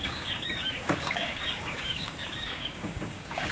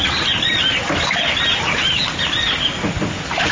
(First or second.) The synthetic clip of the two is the first